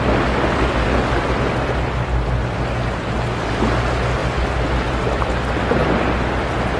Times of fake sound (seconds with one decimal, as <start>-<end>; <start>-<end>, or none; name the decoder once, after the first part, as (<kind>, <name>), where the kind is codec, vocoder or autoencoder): 4.2-5.2 (vocoder, BigVGAN v2)